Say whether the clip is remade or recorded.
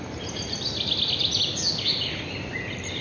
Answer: recorded